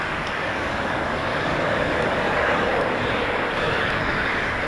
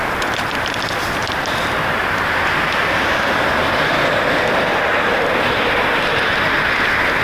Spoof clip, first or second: first